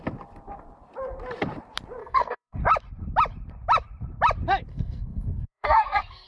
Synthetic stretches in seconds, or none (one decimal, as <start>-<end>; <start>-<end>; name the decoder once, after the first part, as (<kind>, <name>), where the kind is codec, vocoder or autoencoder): 2.0-2.6 (codec, SNAC); 4.7-6.3